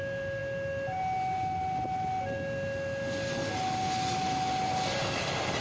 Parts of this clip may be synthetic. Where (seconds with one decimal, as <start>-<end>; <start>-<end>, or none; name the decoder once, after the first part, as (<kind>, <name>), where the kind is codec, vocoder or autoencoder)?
none